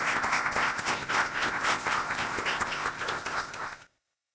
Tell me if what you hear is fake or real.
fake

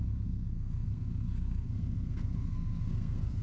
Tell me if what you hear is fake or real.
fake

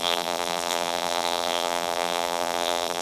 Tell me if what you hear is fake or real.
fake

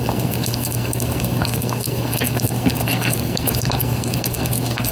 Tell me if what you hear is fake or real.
fake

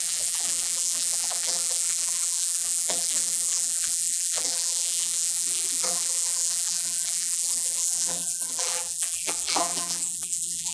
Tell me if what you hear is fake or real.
fake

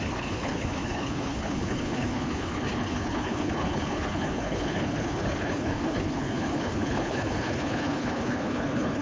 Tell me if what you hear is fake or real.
fake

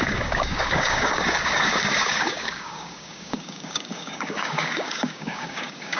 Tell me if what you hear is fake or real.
fake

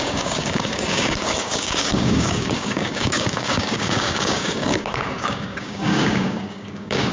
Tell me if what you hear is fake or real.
fake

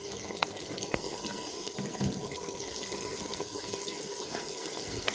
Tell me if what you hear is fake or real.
fake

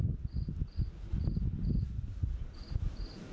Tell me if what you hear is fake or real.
real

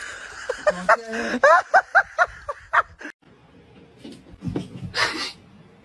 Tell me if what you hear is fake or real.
real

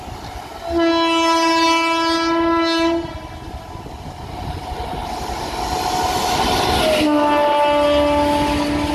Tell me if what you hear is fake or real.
real